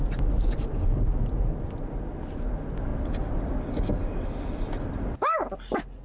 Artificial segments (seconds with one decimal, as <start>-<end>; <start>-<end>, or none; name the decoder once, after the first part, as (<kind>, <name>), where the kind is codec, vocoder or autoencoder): none